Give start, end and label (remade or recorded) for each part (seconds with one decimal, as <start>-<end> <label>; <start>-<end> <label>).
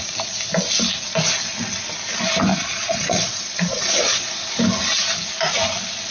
0.0-2.5 recorded; 2.5-4.6 remade; 4.6-6.1 recorded